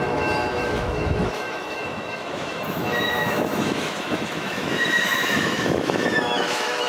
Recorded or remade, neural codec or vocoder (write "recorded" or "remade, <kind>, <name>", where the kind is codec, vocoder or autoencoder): remade, autoencoder, DAC-VAE